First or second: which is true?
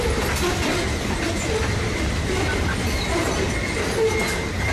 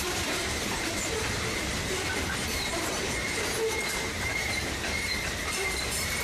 first